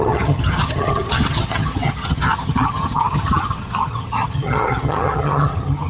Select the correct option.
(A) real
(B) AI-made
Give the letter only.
B